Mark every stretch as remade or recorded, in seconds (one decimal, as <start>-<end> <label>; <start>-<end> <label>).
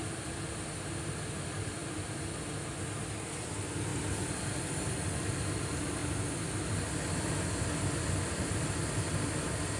0.0-9.8 recorded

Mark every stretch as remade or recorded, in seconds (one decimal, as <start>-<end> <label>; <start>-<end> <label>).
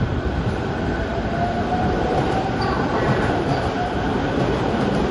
0.0-5.1 remade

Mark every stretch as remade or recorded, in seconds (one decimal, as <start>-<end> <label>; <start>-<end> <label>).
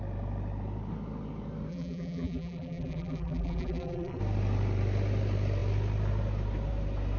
0.0-1.7 recorded; 1.7-4.2 remade; 4.2-7.2 recorded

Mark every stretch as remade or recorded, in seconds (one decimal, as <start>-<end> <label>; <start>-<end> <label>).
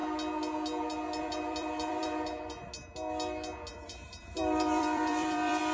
0.0-1.2 recorded; 1.2-2.7 remade; 2.7-3.7 recorded; 3.7-5.7 remade